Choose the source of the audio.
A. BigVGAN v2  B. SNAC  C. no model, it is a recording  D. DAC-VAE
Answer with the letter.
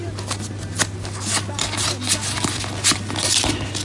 C